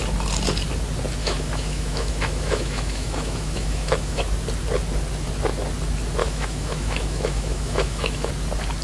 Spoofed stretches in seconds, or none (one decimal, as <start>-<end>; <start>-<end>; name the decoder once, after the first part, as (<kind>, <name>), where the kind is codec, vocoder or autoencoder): 1.2-4.2 (autoencoder, DAC-VAE); 6.2-8.3